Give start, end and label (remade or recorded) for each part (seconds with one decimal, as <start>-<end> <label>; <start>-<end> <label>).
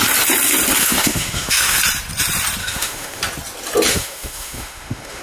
0.0-0.8 recorded; 0.8-1.8 remade; 1.8-2.6 recorded; 2.6-3.2 remade; 3.2-3.9 recorded; 3.9-5.2 remade